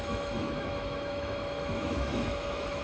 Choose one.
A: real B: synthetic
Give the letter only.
B